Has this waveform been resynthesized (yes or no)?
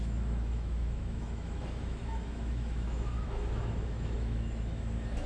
yes